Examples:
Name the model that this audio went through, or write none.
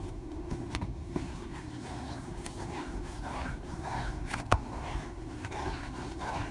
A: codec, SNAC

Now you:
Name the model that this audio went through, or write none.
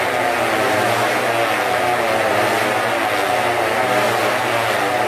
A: none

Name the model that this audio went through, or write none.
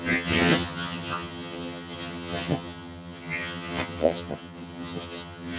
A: vocoder, HiFi-GAN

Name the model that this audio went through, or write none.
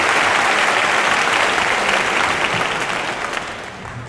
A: none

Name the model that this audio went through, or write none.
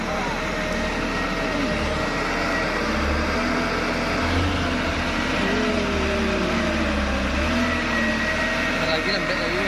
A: none